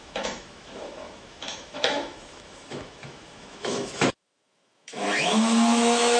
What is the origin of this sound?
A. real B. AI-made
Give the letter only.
B